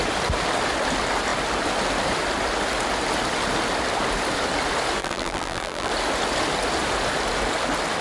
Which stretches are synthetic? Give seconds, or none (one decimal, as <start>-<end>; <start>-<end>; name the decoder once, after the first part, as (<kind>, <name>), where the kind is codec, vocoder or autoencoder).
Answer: 5.0-5.9 (vocoder, BigVGAN v2)